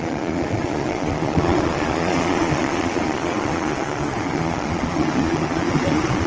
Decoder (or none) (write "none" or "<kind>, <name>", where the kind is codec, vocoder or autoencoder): vocoder, Vocos